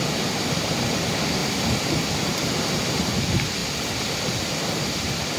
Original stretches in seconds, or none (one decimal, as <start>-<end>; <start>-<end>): 0.0-5.4